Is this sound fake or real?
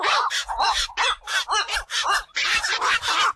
real